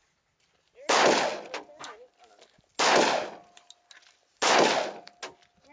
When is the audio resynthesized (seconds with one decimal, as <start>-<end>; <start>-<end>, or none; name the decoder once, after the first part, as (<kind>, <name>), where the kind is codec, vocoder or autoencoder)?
none